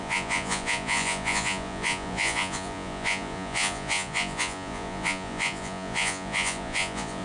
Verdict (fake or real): fake